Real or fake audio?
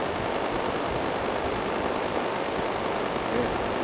real